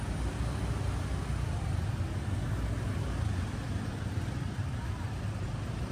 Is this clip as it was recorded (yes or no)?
yes